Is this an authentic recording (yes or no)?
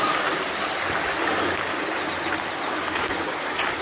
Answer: yes